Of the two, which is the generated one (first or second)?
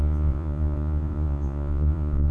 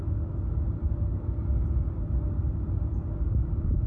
first